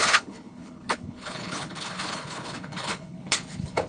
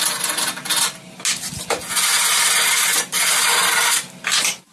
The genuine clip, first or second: second